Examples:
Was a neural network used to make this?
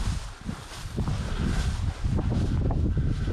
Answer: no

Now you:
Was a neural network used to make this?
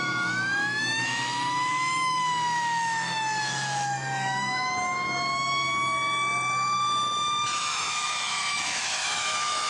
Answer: yes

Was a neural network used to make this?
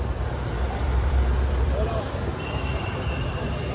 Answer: yes